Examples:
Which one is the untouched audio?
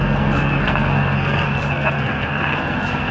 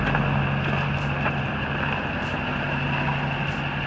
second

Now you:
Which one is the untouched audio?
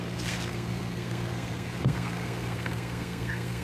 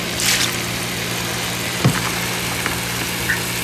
second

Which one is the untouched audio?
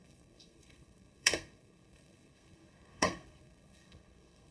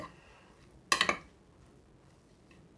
second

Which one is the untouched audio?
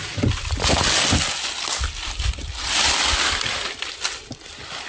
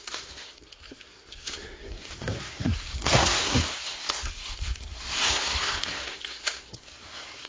first